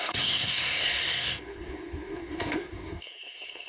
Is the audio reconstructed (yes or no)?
yes